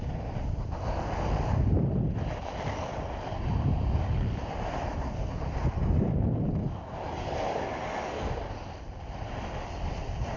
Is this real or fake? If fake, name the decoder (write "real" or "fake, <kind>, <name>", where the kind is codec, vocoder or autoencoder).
real